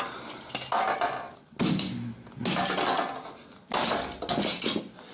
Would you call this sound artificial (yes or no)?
no